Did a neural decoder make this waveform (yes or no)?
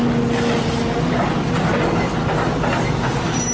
no